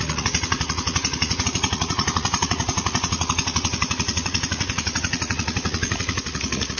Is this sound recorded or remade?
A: remade